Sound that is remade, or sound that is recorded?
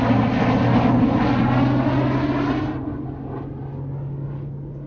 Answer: recorded